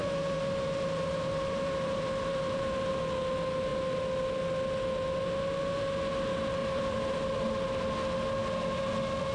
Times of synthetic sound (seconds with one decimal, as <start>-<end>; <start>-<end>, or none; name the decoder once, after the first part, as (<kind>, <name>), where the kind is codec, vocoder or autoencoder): 0.0-2.9 (vocoder, BigVGAN v2); 6.6-7.2